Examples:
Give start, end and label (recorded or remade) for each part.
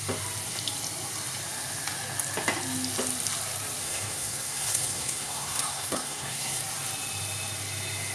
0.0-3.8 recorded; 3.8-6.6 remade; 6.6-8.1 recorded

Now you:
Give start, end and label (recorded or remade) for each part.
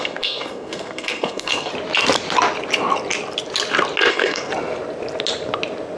0.0-1.7 remade; 1.7-4.1 recorded; 4.1-4.5 remade; 4.5-6.0 recorded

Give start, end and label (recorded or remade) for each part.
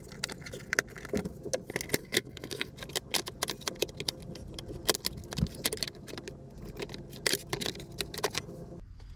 0.0-2.0 recorded; 2.0-2.7 remade; 2.7-9.2 recorded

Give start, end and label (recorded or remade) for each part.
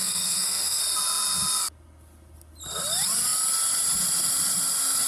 0.0-0.8 remade; 0.8-5.1 recorded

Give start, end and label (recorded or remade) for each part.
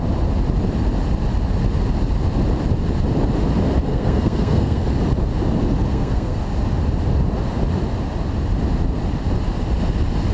0.0-3.9 recorded; 3.9-4.8 remade; 4.8-5.9 recorded; 5.9-6.4 remade; 6.4-10.3 recorded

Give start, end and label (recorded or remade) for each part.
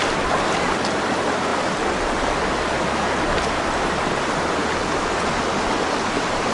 0.0-6.5 recorded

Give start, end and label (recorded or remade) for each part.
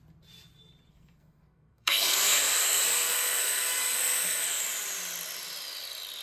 0.0-0.9 recorded; 0.9-4.6 remade; 4.6-6.2 recorded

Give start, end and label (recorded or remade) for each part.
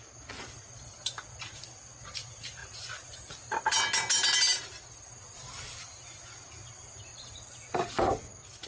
0.0-8.7 recorded